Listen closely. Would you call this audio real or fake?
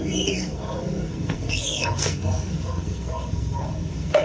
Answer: fake